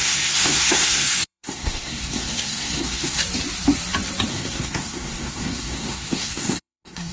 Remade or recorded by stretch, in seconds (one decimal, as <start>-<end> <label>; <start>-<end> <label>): 0.0-3.2 remade; 3.2-4.3 recorded; 4.3-7.1 remade

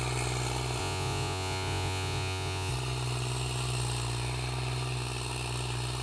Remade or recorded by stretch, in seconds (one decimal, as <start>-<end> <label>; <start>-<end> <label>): 0.0-0.8 recorded; 0.8-2.7 remade; 2.7-6.0 recorded

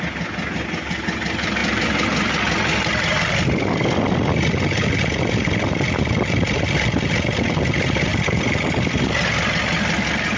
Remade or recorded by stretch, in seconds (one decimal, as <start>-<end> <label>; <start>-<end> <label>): 0.0-10.4 recorded

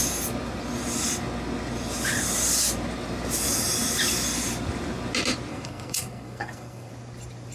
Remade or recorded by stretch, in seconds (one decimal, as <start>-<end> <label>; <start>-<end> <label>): 0.0-5.5 recorded; 5.5-6.9 remade; 6.9-7.5 recorded

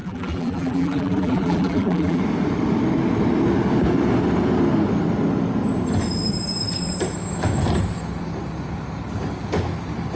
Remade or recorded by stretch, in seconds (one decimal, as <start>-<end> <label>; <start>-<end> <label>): 0.0-2.2 remade; 2.2-10.2 recorded

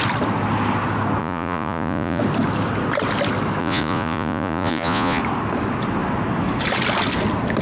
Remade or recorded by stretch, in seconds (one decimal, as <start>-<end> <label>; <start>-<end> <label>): 0.0-1.2 recorded; 1.2-2.2 remade; 2.2-3.6 recorded; 3.6-5.2 remade; 5.2-7.6 recorded

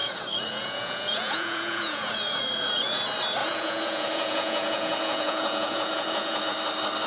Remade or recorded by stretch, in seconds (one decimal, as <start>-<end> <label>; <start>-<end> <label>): 0.0-3.0 remade; 3.0-3.4 recorded; 3.4-6.4 remade; 6.4-7.1 recorded

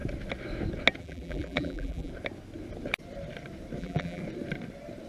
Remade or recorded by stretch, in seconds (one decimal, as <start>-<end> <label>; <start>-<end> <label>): 0.0-1.0 recorded; 1.0-2.1 remade; 2.1-3.8 recorded; 3.8-4.2 remade; 4.2-5.1 recorded